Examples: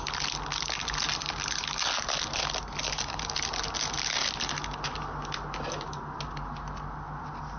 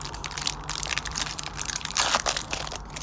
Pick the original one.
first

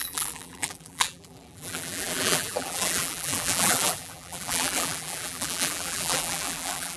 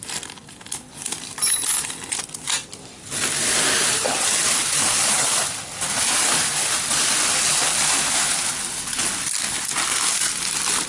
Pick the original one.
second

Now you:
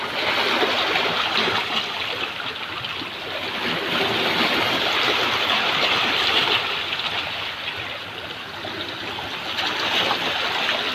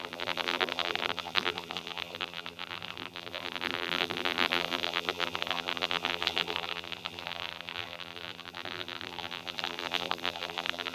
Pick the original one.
first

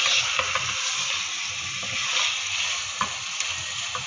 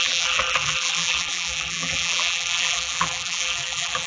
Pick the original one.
first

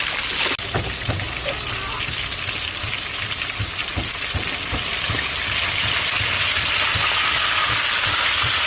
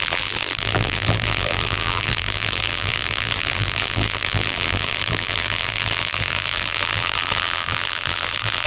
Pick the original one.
first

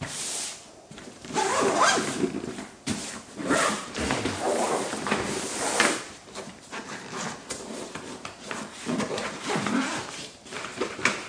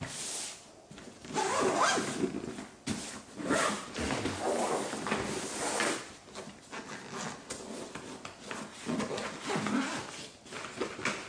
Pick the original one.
second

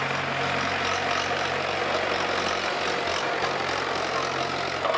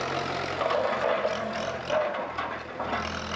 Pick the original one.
first